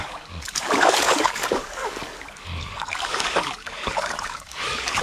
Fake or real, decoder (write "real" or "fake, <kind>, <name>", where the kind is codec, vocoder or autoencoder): fake, codec, DAC